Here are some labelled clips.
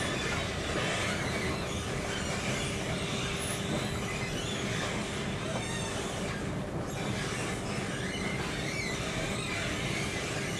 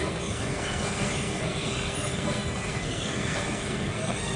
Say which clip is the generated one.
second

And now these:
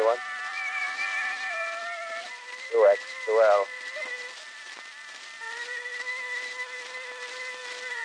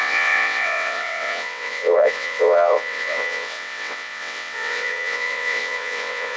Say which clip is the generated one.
second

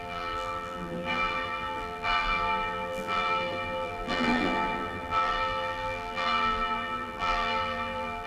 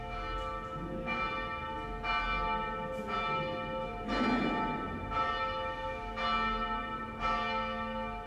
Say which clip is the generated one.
first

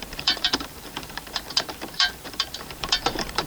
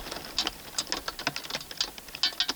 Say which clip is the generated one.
first